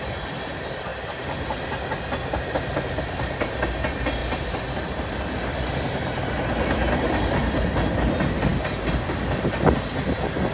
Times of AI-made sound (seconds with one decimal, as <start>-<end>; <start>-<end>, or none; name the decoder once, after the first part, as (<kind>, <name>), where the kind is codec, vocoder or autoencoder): 4.2-5.7 (vocoder, BigVGAN v2)